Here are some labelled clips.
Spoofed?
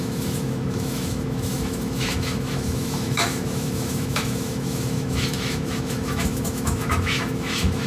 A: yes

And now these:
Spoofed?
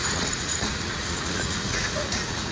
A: yes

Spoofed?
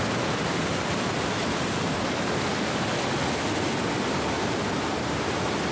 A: no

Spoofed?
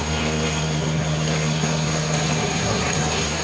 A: yes